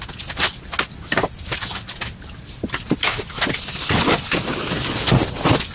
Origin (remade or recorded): recorded